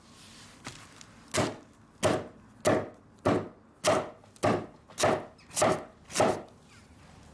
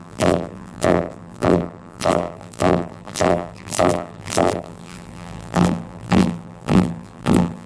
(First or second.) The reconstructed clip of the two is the second